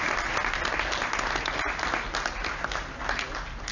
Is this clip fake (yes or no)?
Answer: no